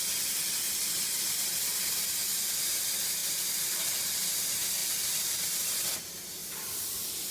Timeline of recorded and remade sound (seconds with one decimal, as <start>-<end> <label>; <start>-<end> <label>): 0.0-3.2 recorded; 3.2-3.8 remade; 3.8-6.4 recorded; 6.4-7.3 remade